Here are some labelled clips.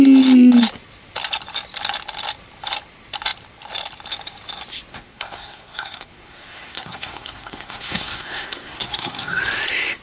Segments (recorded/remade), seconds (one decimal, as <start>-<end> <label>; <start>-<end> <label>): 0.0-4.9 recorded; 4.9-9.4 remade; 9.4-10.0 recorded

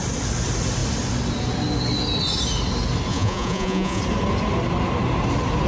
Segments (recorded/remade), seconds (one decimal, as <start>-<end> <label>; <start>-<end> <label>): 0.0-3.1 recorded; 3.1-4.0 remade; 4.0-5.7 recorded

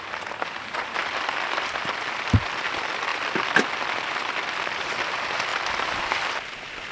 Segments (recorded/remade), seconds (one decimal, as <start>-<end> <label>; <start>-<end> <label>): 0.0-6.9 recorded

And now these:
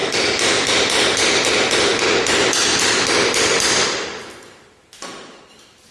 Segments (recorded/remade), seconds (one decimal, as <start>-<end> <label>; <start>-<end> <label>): 0.0-0.7 remade; 0.7-5.9 recorded

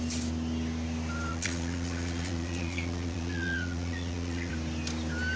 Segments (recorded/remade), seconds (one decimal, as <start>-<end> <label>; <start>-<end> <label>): 0.0-1.3 recorded; 1.3-4.5 remade; 4.5-5.4 recorded